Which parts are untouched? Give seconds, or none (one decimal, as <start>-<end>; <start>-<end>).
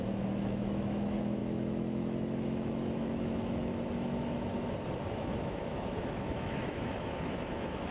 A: 4.5-5.1